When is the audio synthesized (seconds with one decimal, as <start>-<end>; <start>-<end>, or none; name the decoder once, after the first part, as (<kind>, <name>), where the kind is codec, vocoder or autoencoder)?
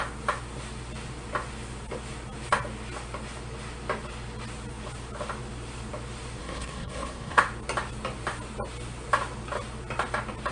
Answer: 6.4-7.4 (codec, SNAC)